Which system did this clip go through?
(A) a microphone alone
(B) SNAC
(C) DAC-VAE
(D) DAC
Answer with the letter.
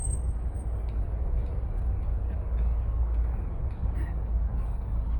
D